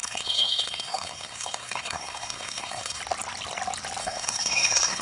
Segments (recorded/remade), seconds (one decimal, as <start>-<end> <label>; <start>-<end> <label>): 0.0-3.0 remade; 3.0-4.0 recorded; 4.0-5.0 remade